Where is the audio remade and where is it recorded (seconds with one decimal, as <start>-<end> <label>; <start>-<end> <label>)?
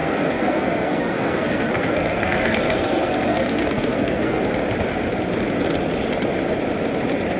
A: 0.0-4.4 remade; 4.4-7.4 recorded